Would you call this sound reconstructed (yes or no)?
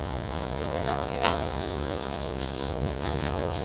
yes